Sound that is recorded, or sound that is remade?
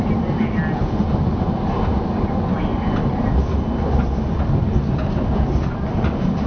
recorded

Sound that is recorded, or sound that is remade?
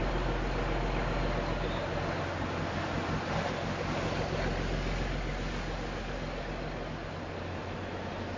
recorded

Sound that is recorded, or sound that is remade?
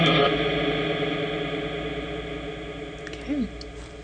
recorded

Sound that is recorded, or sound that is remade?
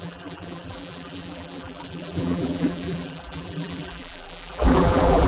remade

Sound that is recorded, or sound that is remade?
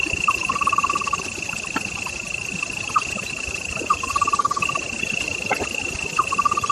remade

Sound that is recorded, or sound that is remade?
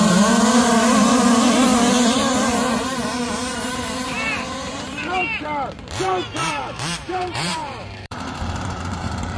remade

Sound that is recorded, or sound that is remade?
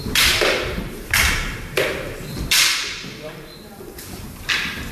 remade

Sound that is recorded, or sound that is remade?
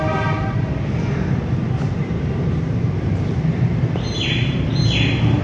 remade